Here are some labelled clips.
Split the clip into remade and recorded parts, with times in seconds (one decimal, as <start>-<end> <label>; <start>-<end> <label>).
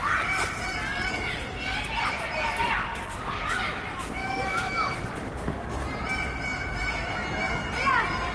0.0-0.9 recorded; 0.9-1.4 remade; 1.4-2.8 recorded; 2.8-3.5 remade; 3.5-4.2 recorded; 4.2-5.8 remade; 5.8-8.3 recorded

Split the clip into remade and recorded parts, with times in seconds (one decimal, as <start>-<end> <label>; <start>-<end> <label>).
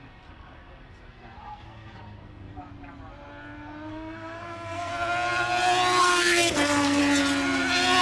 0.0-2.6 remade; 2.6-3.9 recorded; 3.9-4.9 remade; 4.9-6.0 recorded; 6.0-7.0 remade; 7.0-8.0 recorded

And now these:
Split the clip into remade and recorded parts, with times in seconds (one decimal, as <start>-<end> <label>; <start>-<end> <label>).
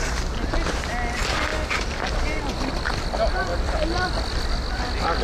0.0-1.5 recorded; 1.5-2.7 remade; 2.7-3.5 recorded; 3.5-4.8 remade; 4.8-5.2 recorded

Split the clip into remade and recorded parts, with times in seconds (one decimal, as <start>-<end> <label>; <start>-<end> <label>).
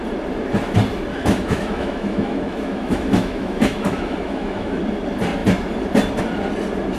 0.0-1.1 recorded; 1.1-4.8 remade; 4.8-7.0 recorded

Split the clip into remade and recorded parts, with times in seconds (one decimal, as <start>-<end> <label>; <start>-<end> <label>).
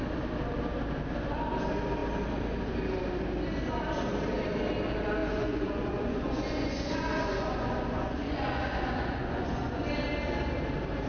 0.0-5.2 recorded; 5.2-9.9 remade; 9.9-11.1 recorded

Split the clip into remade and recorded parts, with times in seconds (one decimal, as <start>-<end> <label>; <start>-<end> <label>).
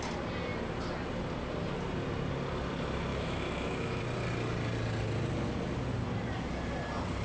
0.0-3.1 recorded; 3.1-4.0 remade; 4.0-7.2 recorded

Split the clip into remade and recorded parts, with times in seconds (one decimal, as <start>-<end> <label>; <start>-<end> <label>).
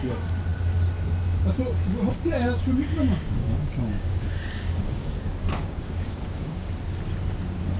0.0-3.4 recorded; 3.4-6.7 remade; 6.7-7.8 recorded